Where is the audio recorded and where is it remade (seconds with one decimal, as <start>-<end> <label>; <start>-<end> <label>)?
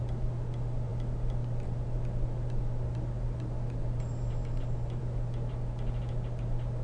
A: 0.0-6.8 recorded